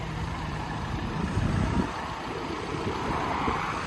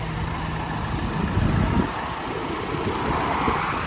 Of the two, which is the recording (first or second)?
second